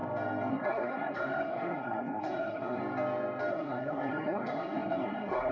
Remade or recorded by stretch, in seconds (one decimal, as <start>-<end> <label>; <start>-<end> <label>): 0.0-0.5 recorded; 0.5-2.8 remade; 2.8-3.5 recorded; 3.5-5.5 remade